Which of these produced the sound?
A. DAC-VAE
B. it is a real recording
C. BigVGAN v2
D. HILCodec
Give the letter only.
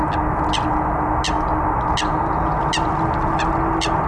B